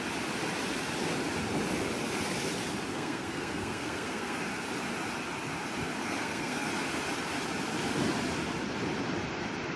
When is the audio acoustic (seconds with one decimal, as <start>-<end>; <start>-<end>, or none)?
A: 0.0-2.9; 4.4-6.0; 6.7-9.8